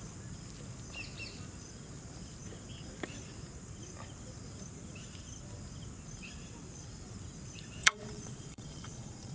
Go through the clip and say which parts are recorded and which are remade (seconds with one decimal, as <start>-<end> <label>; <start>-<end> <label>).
0.0-7.8 recorded; 7.8-9.3 remade